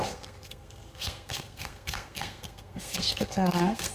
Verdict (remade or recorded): remade